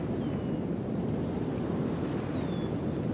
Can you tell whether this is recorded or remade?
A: recorded